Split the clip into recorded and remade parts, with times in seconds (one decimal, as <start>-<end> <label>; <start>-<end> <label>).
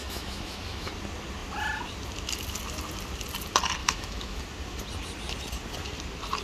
0.0-0.9 remade; 0.9-3.8 recorded; 3.8-4.4 remade; 4.4-6.4 recorded